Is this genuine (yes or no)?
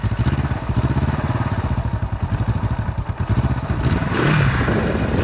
yes